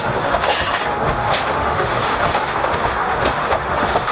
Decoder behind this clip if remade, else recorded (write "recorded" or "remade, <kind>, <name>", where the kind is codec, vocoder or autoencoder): remade, autoencoder, DAC-VAE